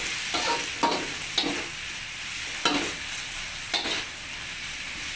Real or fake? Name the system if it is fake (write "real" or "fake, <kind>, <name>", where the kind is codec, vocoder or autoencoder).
real